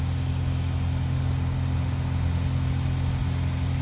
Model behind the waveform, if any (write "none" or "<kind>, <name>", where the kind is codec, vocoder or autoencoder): none